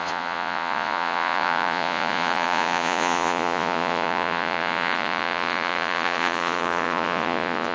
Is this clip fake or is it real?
fake